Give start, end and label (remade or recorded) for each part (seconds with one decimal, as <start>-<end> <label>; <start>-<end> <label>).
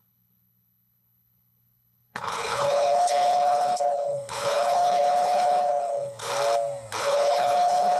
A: 0.0-6.3 remade; 6.3-7.0 recorded; 7.0-8.0 remade